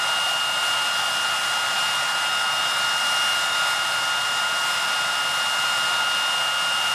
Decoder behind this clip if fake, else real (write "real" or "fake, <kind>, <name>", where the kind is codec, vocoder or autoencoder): real